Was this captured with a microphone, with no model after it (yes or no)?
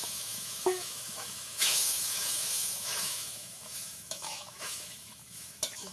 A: no